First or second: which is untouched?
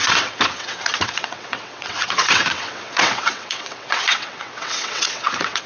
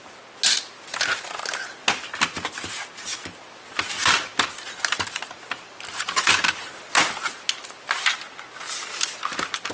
second